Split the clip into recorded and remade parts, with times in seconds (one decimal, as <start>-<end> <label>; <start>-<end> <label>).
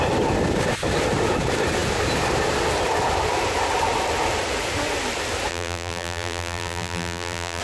0.0-5.5 recorded; 5.5-7.6 remade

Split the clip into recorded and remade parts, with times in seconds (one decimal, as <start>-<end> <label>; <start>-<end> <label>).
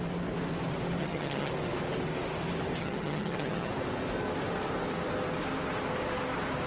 0.0-1.0 recorded; 1.0-1.5 remade; 1.5-2.8 recorded; 2.8-3.7 remade; 3.7-6.7 recorded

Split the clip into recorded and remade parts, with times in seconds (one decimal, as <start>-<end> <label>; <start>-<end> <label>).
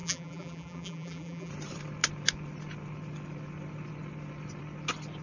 0.0-1.5 remade; 1.5-5.2 recorded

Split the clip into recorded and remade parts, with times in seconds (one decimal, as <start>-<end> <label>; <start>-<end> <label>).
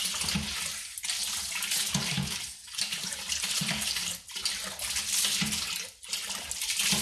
0.0-7.0 recorded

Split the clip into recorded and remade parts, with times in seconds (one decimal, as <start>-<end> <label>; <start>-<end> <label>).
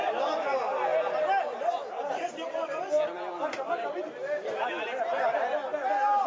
0.0-6.3 recorded